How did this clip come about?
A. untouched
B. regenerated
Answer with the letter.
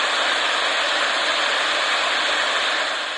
A